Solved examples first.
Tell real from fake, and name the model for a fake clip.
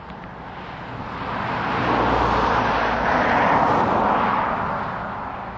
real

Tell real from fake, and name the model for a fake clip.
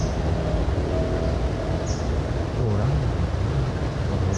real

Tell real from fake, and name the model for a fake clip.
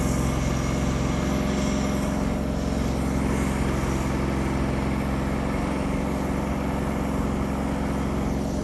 real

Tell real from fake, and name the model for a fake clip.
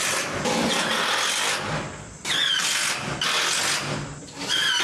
real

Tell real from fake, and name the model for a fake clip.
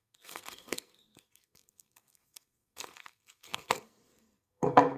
fake, codec, SNAC